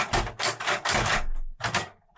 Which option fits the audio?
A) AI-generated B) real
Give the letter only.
B